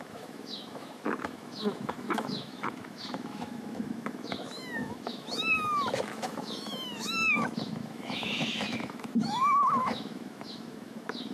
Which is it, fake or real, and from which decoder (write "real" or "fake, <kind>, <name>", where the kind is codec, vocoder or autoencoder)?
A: fake, autoencoder, DAC-VAE